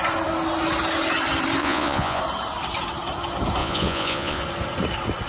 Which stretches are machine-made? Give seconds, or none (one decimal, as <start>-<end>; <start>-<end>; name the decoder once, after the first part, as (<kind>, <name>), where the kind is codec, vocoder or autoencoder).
1.6-2.2 (vocoder, Vocos); 3.6-4.4